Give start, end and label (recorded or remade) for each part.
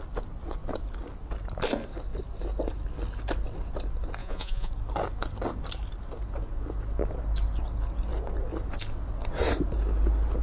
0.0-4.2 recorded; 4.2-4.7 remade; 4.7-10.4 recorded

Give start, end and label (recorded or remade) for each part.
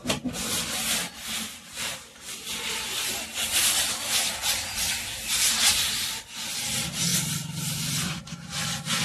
0.0-9.0 recorded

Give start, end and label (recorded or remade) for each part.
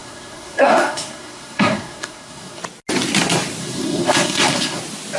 0.0-2.6 remade; 2.6-3.6 recorded; 3.6-4.8 remade; 4.8-5.2 recorded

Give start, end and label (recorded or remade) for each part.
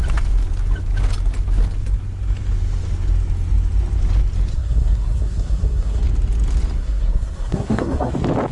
0.0-4.5 recorded; 4.5-6.0 remade; 6.0-6.8 recorded; 6.8-8.1 remade; 8.1-8.5 recorded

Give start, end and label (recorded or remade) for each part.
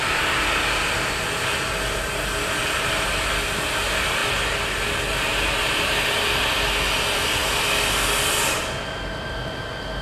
0.0-10.0 recorded